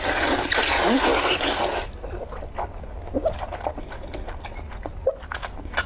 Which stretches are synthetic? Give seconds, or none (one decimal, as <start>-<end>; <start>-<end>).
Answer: none